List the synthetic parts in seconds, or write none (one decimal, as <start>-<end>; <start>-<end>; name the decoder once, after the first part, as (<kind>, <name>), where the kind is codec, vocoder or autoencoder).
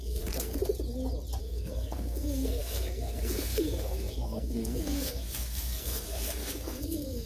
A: 0.0-0.6 (codec, SNAC); 1.4-7.3